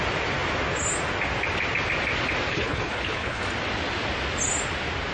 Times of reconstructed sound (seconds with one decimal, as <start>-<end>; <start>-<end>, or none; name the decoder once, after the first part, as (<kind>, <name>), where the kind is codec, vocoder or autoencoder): 2.5-3.4 (codec, HILCodec)